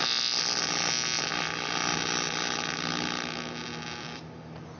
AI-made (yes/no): no